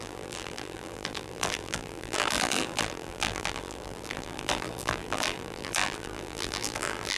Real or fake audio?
fake